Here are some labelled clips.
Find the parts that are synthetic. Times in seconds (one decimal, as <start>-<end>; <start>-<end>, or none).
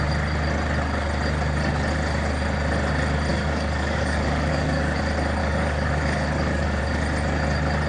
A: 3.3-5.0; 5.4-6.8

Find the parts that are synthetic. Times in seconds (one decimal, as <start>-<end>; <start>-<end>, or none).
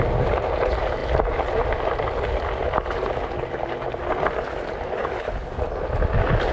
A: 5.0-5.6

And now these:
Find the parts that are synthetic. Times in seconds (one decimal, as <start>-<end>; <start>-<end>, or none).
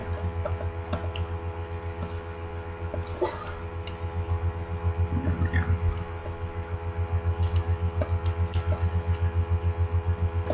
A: none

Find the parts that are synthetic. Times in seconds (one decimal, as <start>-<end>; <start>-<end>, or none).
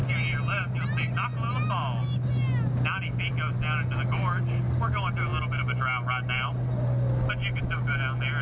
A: none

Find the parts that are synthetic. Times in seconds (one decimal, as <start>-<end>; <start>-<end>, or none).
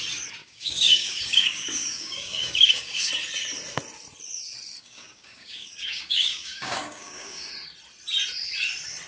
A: 0.4-3.1; 4.8-7.5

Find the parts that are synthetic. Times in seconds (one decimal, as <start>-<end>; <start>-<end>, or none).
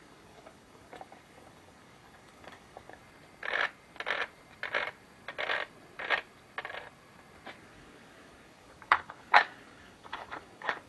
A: 0.0-3.0; 7.6-10.9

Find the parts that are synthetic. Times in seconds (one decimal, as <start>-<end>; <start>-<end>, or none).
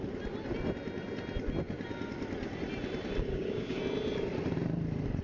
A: 3.3-3.8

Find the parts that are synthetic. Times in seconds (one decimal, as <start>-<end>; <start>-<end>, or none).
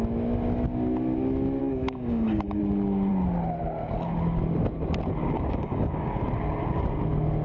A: 1.6-2.6; 5.2-6.2